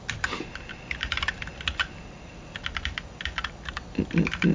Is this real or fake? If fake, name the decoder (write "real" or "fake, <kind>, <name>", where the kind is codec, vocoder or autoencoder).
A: real